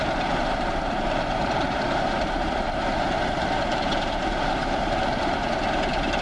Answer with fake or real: fake